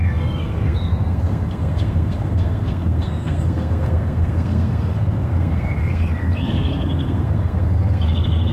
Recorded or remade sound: remade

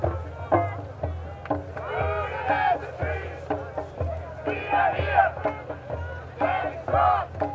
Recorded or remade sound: recorded